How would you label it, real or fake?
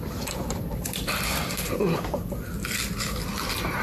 fake